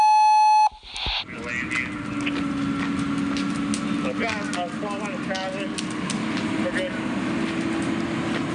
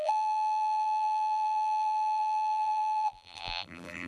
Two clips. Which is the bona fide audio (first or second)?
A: first